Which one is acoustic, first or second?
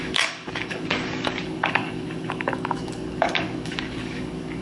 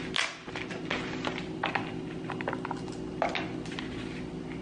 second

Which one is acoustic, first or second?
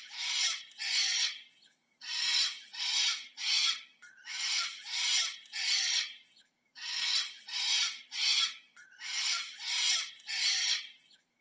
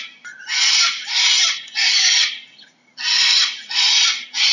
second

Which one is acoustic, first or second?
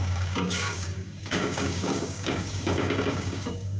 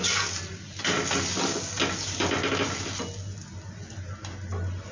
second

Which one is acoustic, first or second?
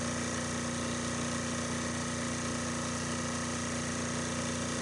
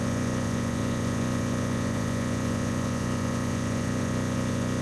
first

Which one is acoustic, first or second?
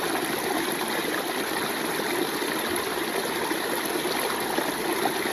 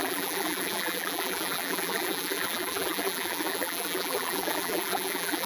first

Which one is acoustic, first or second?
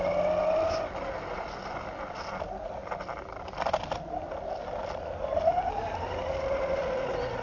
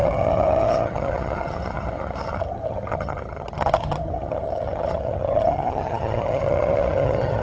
first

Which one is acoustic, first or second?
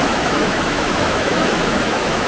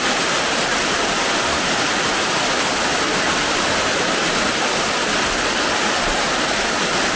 second